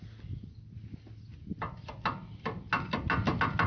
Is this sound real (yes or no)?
yes